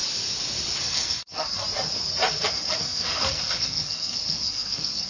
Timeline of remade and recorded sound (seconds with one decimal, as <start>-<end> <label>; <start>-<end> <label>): 0.0-0.8 recorded; 0.8-1.6 remade; 1.6-2.3 recorded; 2.3-5.1 remade